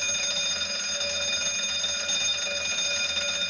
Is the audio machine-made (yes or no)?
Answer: no